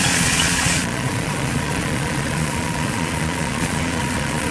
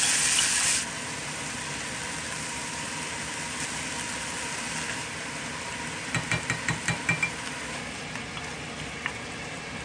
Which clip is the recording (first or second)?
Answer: second